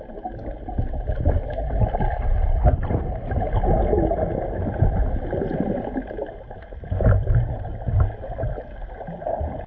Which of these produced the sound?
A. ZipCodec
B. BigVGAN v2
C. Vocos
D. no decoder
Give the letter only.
D